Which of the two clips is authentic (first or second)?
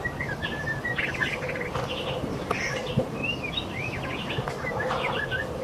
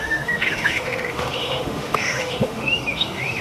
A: first